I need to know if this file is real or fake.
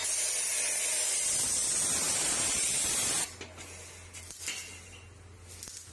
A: real